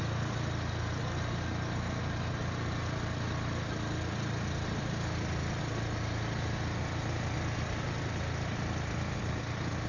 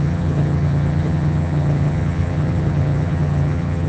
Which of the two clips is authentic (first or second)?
first